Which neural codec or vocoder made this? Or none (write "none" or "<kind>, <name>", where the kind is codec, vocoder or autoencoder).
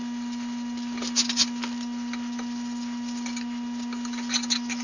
none